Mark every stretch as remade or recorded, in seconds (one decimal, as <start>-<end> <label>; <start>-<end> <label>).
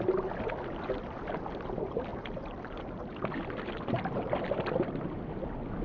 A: 0.0-5.8 recorded